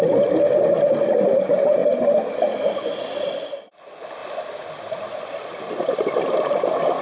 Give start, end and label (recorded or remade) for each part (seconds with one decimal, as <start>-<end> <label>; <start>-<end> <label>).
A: 0.0-7.0 recorded